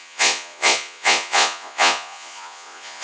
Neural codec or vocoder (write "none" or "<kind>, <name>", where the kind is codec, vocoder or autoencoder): vocoder, Vocos